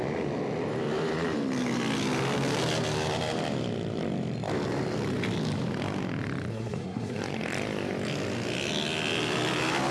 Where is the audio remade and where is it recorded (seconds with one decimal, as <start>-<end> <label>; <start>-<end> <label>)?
0.0-6.5 recorded; 6.5-7.2 remade; 7.2-9.9 recorded